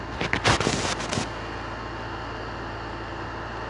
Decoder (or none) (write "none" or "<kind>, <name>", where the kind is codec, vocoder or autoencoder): none